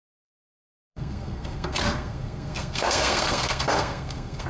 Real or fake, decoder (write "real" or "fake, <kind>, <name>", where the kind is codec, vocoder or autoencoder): fake, codec, SNAC